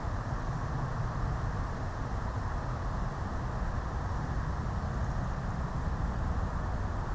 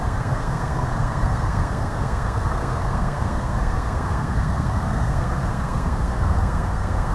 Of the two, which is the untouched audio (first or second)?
first